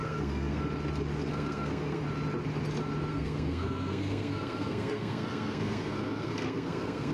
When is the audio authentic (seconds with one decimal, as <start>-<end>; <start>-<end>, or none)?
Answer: 0.6-1.3; 2.0-3.1